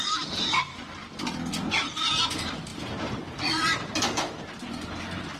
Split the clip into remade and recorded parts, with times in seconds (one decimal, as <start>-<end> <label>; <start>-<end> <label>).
0.0-2.7 recorded; 2.7-4.9 remade; 4.9-5.4 recorded